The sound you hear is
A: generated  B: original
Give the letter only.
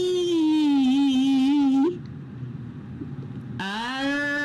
B